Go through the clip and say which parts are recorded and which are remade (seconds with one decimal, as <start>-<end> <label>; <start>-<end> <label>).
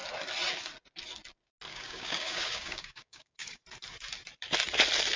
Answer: 0.0-1.7 recorded; 1.7-3.6 remade; 3.6-5.2 recorded